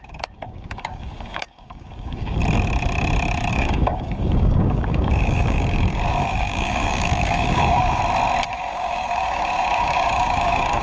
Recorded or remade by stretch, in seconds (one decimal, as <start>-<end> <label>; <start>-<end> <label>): 0.0-2.4 remade; 2.4-3.5 recorded; 3.5-8.0 remade; 8.0-8.5 recorded; 8.5-10.8 remade